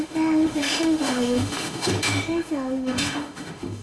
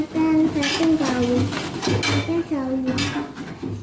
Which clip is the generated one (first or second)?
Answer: first